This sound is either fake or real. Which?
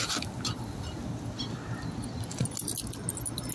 real